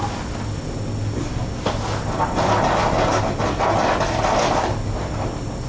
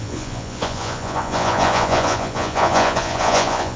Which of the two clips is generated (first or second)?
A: second